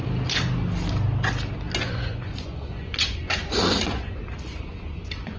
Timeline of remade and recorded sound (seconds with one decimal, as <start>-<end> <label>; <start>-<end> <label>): 0.0-1.9 recorded; 1.9-5.4 remade